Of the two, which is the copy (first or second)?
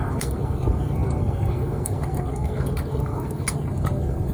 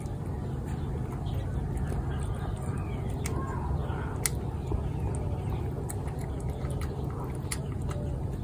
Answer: first